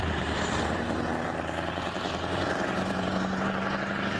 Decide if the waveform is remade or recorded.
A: remade